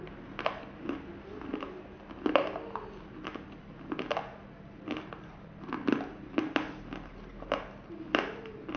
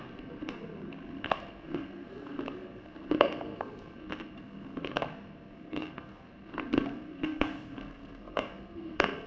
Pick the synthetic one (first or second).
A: second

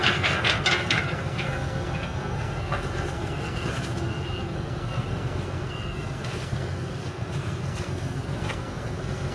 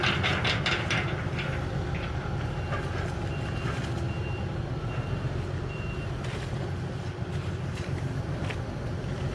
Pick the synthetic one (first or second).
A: first